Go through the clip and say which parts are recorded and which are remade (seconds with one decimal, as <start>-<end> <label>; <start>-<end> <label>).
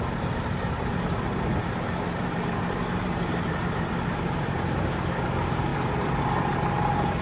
0.0-7.2 remade